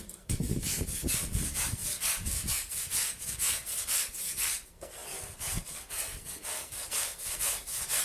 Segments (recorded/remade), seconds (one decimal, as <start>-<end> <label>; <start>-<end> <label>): 0.0-8.0 remade

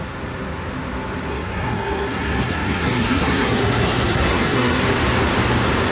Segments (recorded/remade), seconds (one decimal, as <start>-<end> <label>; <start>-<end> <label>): 0.0-1.3 recorded; 1.3-4.8 remade; 4.8-5.9 recorded

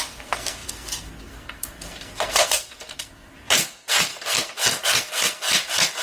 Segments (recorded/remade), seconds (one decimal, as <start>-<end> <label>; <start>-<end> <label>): 0.0-6.0 remade

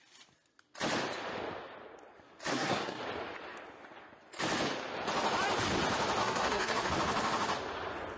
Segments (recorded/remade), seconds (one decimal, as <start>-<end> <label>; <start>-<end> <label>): 0.0-2.5 recorded; 2.5-3.0 remade; 3.0-6.2 recorded; 6.2-6.9 remade; 6.9-8.2 recorded

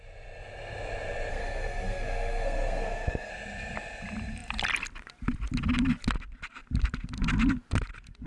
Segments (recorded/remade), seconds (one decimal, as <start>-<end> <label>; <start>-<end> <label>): 0.0-1.3 recorded; 1.3-3.3 remade; 3.3-8.3 recorded

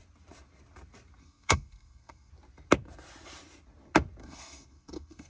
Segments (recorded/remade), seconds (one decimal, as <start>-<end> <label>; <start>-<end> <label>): 0.0-1.2 recorded; 1.2-2.3 remade; 2.3-4.2 recorded; 4.2-5.3 remade

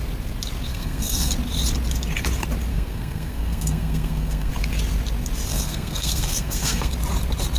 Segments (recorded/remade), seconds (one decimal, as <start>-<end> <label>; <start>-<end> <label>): 0.0-0.7 recorded; 0.7-1.3 remade; 1.3-2.7 recorded; 2.7-4.5 remade; 4.5-5.5 recorded; 5.5-6.9 remade; 6.9-7.6 recorded